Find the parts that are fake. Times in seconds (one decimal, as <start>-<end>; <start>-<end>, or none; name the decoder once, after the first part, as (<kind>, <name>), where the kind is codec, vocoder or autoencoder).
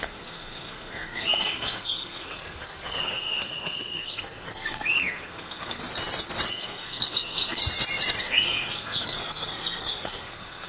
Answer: 0.0-5.8 (codec, SNAC); 6.5-7.6; 8.2-10.7